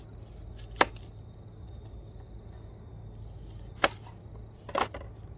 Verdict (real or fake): real